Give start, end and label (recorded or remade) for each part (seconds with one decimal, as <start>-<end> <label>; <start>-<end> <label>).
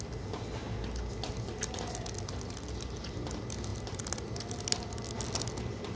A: 0.0-6.0 recorded